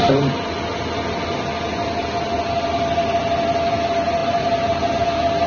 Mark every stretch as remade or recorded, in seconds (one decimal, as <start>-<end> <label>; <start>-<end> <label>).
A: 0.0-4.2 recorded; 4.2-4.8 remade; 4.8-5.5 recorded